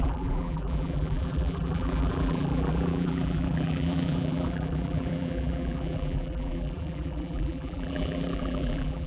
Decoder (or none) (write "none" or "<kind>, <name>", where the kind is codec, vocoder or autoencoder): vocoder, BigVGAN v2